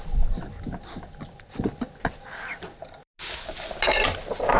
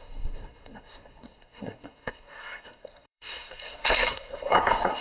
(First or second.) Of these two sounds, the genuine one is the first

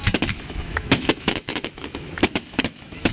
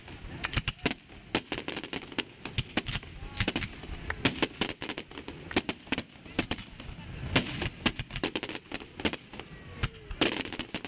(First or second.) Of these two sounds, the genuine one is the second